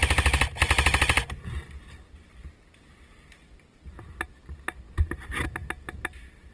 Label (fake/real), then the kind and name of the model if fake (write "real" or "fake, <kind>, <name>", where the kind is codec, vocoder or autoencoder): real